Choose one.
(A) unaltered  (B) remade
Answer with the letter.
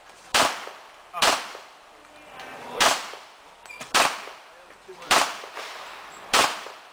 B